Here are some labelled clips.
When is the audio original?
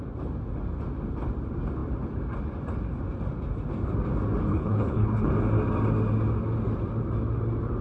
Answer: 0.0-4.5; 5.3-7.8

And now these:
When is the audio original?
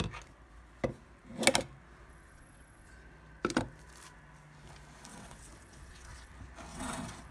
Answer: 0.0-2.1; 2.9-5.1; 6.3-6.7